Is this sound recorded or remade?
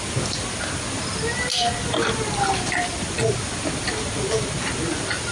recorded